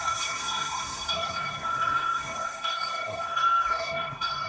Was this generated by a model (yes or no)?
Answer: yes